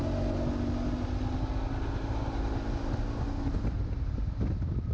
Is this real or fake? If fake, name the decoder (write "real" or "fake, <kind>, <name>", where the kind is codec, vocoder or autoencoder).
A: real